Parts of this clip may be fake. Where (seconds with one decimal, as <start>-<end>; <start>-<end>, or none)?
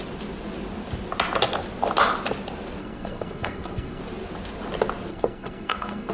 2.8-4.0; 5.1-6.1